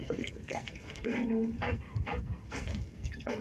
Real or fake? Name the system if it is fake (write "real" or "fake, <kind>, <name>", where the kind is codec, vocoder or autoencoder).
fake, codec, SNAC